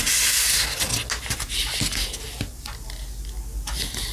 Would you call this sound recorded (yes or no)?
yes